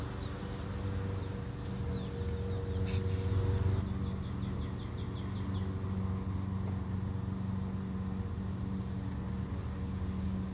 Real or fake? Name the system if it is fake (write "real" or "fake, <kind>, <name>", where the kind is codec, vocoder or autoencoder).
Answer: real